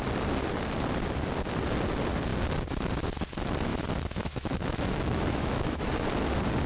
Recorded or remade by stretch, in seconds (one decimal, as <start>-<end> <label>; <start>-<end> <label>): 0.0-3.7 recorded; 3.7-5.9 remade; 5.9-6.7 recorded